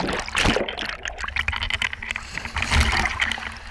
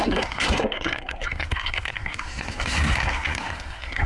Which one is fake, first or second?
second